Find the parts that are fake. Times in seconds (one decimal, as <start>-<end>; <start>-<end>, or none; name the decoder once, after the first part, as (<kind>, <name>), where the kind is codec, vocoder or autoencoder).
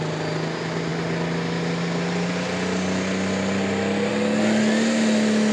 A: none